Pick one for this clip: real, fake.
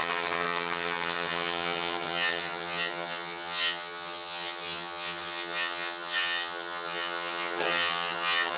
fake